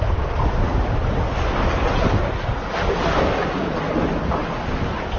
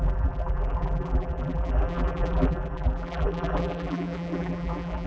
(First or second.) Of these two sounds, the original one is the first